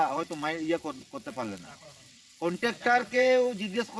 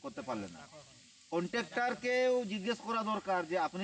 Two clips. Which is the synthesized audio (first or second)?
first